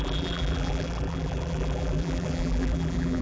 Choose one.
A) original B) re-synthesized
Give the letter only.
B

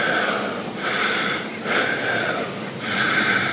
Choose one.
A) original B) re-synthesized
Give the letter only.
A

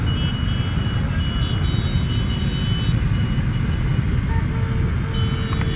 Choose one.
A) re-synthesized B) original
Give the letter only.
B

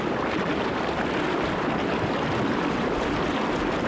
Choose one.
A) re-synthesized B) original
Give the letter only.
B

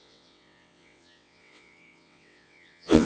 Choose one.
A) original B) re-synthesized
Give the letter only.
B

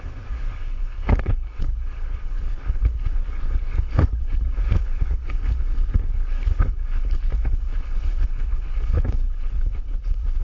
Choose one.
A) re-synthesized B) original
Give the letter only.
A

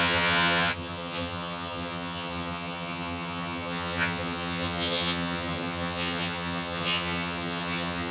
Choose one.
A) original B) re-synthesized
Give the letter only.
B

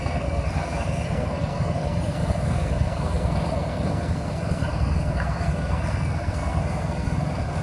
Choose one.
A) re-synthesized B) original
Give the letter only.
A